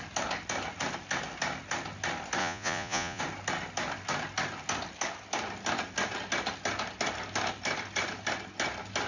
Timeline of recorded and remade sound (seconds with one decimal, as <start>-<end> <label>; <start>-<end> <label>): 0.0-2.4 recorded; 2.4-3.2 remade; 3.2-9.1 recorded